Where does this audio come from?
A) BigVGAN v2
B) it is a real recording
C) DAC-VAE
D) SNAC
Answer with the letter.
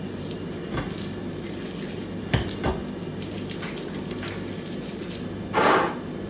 B